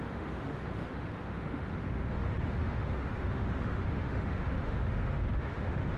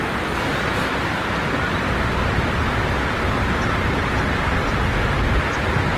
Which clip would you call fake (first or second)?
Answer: first